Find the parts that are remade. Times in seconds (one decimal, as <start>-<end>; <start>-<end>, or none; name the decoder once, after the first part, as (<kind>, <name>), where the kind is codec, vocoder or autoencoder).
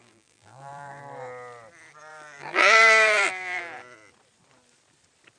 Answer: 0.0-1.0 (vocoder, BigVGAN v2); 2.1-3.6